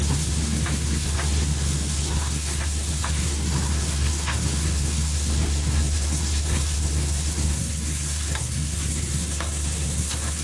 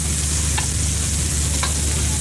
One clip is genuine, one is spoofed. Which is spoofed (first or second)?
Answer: first